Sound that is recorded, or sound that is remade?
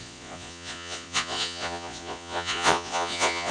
remade